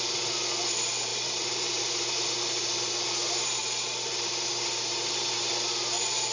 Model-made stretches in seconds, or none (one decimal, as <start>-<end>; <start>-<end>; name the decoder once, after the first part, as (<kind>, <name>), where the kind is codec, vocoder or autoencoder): 1.1-2.4 (vocoder, BigVGAN v2); 3.6-5.5